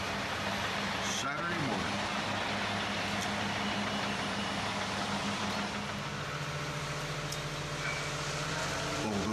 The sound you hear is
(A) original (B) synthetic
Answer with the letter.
A